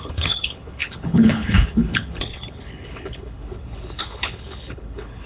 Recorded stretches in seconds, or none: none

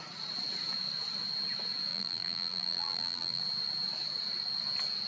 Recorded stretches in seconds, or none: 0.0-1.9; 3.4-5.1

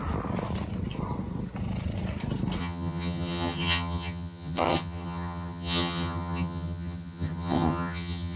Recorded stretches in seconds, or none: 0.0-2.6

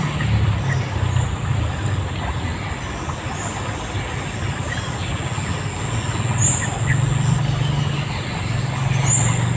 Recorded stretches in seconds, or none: 0.0-9.6

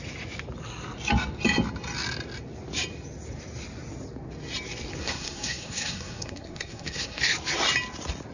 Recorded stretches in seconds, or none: 0.0-5.0; 7.2-8.3